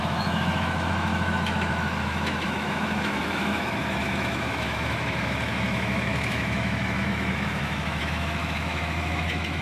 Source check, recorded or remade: remade